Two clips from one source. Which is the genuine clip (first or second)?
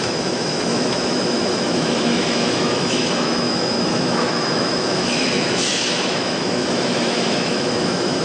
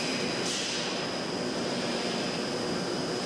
second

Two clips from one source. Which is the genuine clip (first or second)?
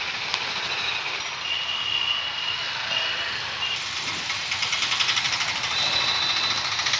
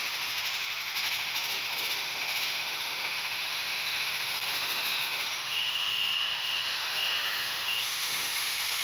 first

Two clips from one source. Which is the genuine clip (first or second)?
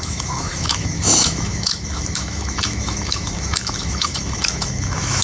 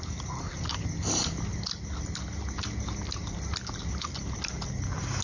second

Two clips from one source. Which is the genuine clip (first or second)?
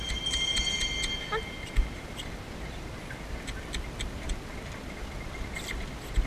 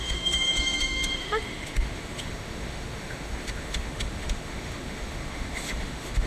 first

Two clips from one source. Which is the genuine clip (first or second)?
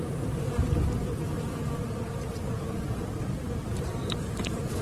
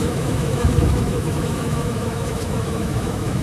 first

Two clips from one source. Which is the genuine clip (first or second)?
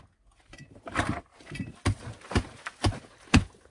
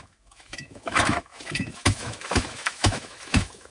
first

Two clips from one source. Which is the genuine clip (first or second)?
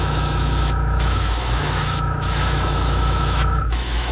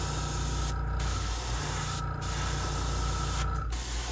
second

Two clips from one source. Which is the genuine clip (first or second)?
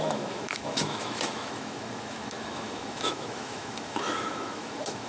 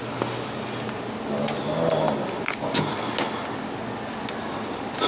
second